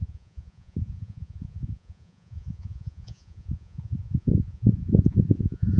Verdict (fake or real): fake